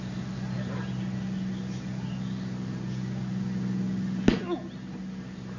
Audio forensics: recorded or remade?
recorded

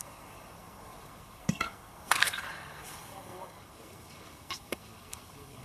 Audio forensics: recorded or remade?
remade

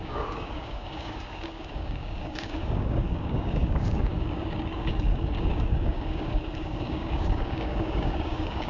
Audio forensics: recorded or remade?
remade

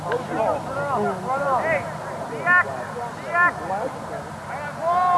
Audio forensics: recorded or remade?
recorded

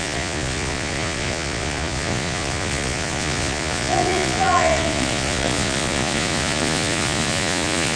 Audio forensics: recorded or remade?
remade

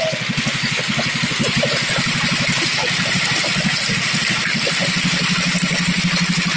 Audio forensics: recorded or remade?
recorded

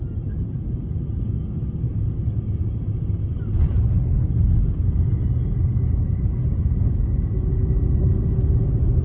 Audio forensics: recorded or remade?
recorded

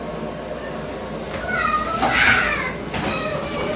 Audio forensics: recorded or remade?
recorded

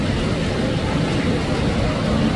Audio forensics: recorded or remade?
recorded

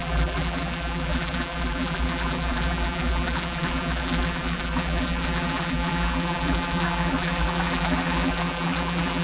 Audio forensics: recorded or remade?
remade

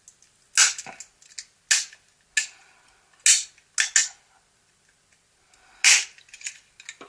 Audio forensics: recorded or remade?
recorded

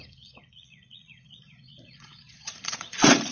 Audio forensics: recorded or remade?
remade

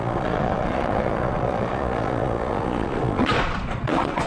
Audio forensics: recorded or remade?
remade